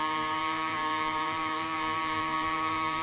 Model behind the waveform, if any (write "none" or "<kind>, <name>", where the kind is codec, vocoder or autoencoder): vocoder, BigVGAN v2